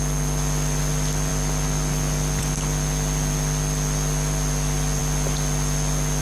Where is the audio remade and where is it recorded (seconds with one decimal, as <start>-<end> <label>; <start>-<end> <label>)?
0.0-6.2 recorded